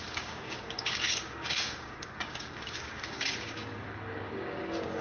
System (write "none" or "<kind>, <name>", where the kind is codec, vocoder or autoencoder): codec, DAC